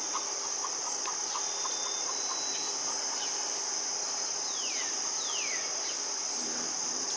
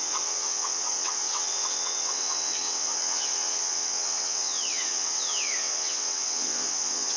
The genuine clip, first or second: first